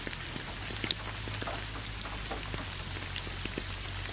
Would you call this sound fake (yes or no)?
no